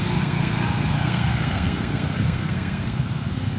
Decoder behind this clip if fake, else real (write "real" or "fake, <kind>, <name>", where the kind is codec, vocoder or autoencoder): fake, codec, SNAC